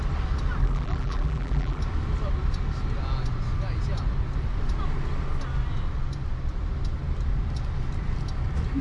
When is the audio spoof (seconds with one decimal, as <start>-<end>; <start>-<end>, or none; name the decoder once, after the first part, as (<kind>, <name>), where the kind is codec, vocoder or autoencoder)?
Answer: 0.6-1.8 (vocoder, BigVGAN v2)